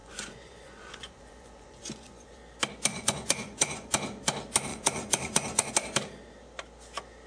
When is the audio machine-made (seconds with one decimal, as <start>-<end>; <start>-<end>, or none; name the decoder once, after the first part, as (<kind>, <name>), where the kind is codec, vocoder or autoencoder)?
0.0-2.4 (vocoder, Vocos); 2.9-3.9; 4.7-5.7